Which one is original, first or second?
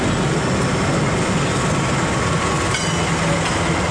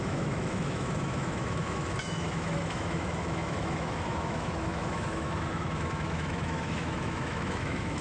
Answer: first